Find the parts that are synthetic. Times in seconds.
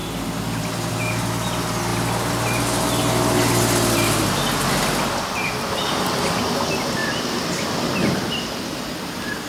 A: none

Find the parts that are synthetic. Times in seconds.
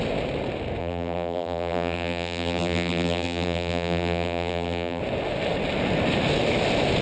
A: 0.8-5.0 (vocoder, BigVGAN v2)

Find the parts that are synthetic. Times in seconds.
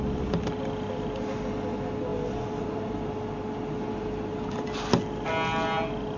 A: none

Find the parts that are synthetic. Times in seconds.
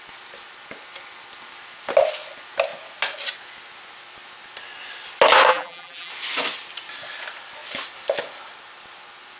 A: 5.5-6.1 (vocoder, BigVGAN v2)